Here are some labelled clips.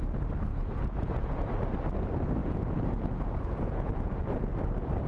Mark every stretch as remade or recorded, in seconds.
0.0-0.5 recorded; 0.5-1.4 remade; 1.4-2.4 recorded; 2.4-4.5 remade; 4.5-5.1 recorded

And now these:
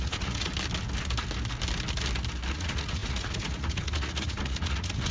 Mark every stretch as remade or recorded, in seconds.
0.0-0.5 remade; 0.5-2.5 recorded; 2.5-5.1 remade

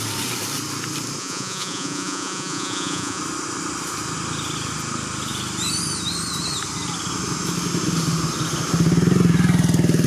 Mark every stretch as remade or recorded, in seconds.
0.0-1.2 recorded; 1.2-3.2 remade; 3.2-10.1 recorded

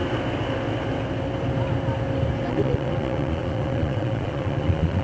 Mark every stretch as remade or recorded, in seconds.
0.0-2.5 recorded; 2.5-5.0 remade

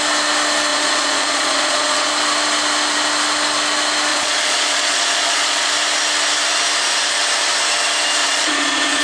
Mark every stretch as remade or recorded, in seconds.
0.0-0.7 recorded; 0.7-2.1 remade; 2.1-4.1 recorded; 4.1-5.7 remade; 5.7-8.2 recorded; 8.2-9.0 remade

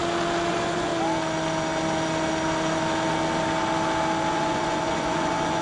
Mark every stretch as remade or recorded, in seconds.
0.0-0.5 recorded; 0.5-0.9 remade; 0.9-4.3 recorded; 4.3-5.6 remade

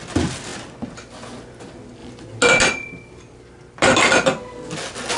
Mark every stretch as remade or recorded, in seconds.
0.0-5.2 recorded

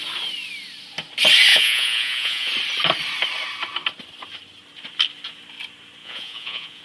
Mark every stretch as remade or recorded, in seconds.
0.0-1.5 recorded; 1.5-2.5 remade; 2.5-6.0 recorded; 6.0-6.8 remade